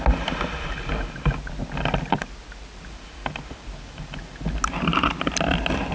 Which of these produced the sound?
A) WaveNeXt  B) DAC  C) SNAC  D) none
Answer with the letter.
D